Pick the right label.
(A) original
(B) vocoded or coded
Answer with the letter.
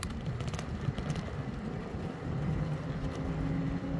A